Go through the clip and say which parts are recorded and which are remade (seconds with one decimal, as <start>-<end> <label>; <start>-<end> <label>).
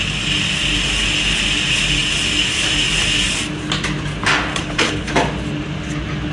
0.0-4.5 recorded; 4.5-5.1 remade; 5.1-6.3 recorded